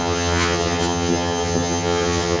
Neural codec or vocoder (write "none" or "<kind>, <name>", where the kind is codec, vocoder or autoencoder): vocoder, HiFi-GAN